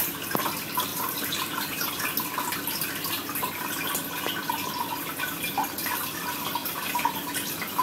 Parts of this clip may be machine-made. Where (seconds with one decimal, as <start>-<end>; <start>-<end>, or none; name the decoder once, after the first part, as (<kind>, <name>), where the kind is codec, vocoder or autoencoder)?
0.9-1.9 (vocoder, BigVGAN v2); 6.6-7.1